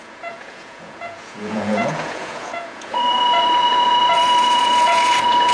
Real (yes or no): no